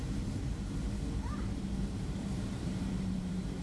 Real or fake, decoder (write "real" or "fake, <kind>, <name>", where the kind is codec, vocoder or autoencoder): fake, vocoder, BigVGAN v2